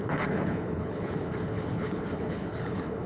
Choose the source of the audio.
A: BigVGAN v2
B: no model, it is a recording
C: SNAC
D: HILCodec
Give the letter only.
D